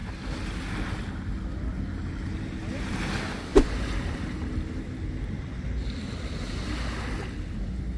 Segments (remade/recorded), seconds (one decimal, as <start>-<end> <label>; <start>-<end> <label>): 0.0-3.5 recorded; 3.5-4.8 remade; 4.8-8.0 recorded